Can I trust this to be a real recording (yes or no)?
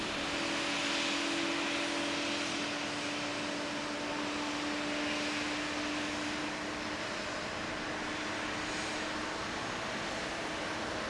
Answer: yes